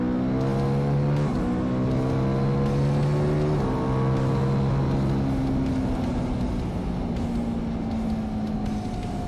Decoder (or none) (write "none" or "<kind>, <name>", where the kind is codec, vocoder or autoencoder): none